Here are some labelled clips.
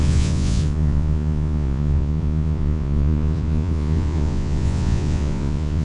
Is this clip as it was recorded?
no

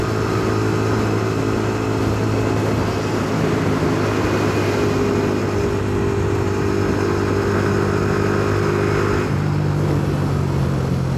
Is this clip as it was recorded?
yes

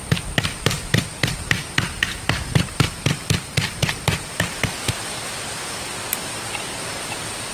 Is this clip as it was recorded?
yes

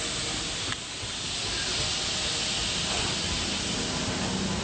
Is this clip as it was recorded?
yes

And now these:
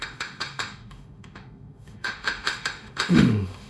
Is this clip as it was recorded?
no